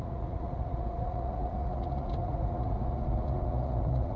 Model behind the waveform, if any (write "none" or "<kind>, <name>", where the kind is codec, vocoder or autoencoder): vocoder, Vocos